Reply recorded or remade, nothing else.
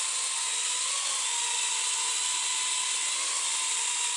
recorded